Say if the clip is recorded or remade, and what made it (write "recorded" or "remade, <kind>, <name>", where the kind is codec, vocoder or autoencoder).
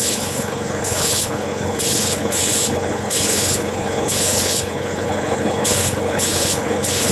remade, codec, HILCodec